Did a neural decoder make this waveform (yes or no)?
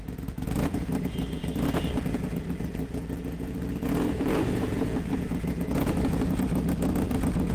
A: yes